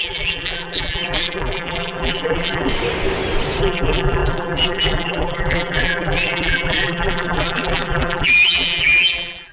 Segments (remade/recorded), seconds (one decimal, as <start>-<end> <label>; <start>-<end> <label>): 0.0-2.7 remade; 2.7-3.6 recorded; 3.6-9.5 remade